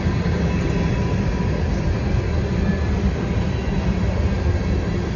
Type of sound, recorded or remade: recorded